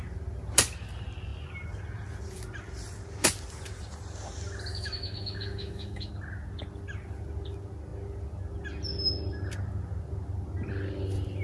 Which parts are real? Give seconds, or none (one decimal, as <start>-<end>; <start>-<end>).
0.0-4.7; 6.1-11.4